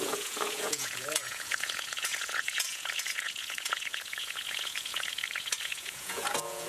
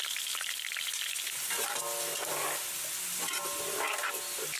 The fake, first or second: first